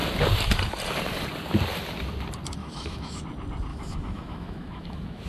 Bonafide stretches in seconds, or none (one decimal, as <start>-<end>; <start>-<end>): 0.0-2.6; 3.2-3.7